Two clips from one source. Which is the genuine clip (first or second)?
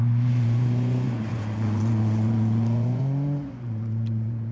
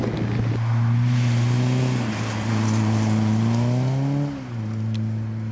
second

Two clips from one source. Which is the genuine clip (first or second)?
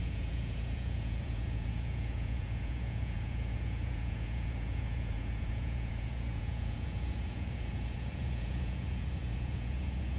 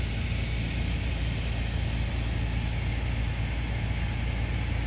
second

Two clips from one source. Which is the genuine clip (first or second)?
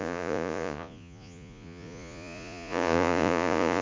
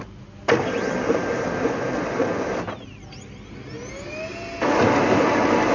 second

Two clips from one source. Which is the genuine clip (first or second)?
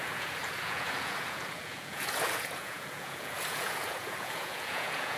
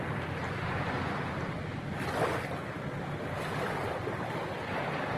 second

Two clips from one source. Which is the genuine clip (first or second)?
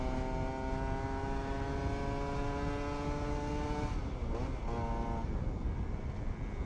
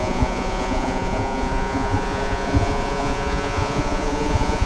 first